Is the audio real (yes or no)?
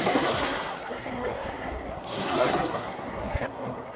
no